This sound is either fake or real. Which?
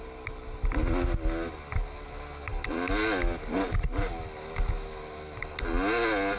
real